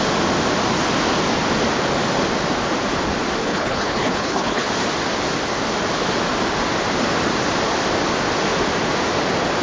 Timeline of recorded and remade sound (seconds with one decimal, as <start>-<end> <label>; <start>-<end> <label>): 0.0-3.4 recorded; 3.4-4.7 remade; 4.7-9.6 recorded